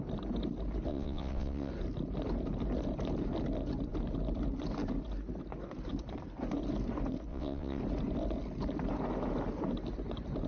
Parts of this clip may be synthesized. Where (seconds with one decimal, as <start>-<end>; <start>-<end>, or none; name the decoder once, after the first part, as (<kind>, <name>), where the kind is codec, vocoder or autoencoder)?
0.9-1.7 (vocoder, WaveNeXt); 7.3-7.8